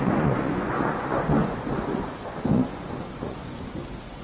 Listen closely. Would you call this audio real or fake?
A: fake